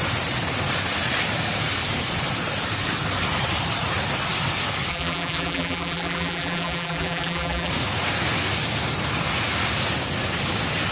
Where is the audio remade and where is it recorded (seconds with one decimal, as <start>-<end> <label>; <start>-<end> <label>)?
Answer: 0.0-4.9 recorded; 4.9-7.7 remade; 7.7-10.9 recorded